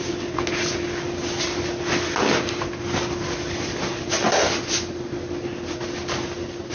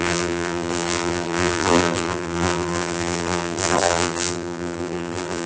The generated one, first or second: second